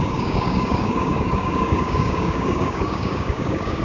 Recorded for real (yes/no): no